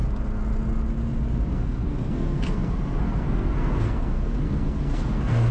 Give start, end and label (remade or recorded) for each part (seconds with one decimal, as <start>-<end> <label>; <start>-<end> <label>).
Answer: 0.0-1.5 recorded; 1.5-5.5 remade